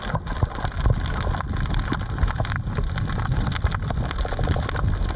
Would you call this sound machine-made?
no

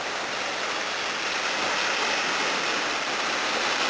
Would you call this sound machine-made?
no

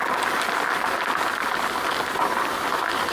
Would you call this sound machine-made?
no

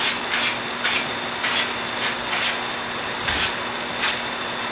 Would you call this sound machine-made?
no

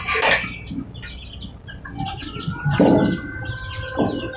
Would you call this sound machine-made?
no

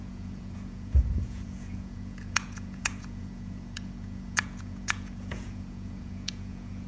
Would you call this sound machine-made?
yes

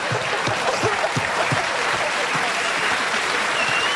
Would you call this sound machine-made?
yes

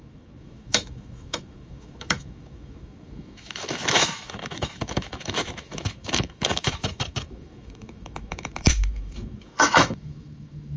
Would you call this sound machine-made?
yes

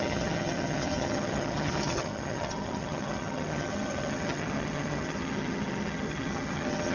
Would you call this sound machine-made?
yes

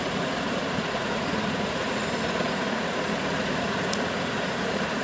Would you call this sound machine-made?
yes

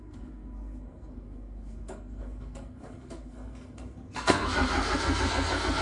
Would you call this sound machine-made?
yes